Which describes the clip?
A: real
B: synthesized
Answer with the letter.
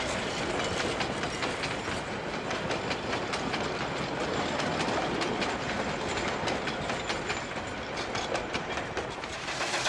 A